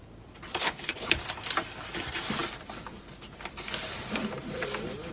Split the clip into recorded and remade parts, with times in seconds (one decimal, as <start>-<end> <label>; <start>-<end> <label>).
0.0-0.6 recorded; 0.6-1.1 remade; 1.1-5.1 recorded